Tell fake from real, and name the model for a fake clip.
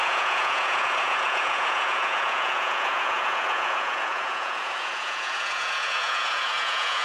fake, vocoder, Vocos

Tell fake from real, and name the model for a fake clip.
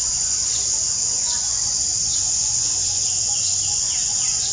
fake, vocoder, Vocos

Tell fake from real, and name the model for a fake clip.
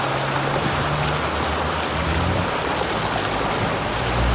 real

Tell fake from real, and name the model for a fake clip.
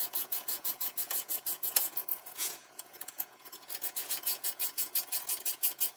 fake, vocoder, Vocos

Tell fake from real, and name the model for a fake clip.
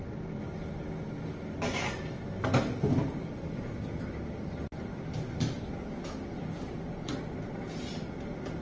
real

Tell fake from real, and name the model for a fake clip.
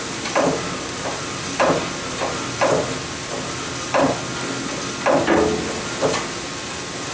real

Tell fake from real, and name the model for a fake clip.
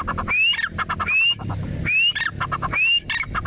real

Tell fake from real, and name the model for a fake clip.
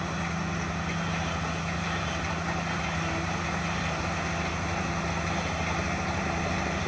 real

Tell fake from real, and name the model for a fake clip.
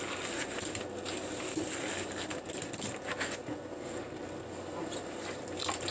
real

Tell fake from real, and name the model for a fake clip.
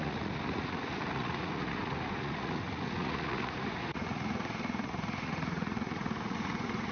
fake, vocoder, Vocos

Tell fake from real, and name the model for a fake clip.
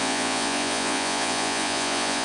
fake, vocoder, Vocos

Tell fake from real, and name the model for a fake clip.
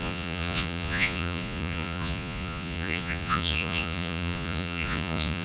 fake, vocoder, Vocos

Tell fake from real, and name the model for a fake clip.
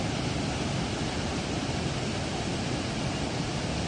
real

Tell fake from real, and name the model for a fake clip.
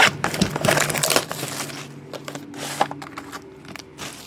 real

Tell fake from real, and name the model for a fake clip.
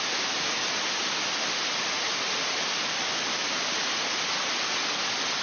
real